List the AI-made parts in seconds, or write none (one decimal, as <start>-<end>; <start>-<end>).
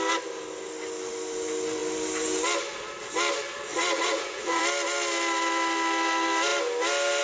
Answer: 3.7-4.6